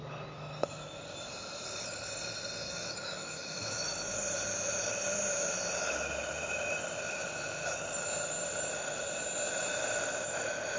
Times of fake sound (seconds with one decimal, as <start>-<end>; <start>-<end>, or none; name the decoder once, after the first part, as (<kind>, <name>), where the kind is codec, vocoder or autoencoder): 2.6-4.1 (autoencoder, DAC-VAE)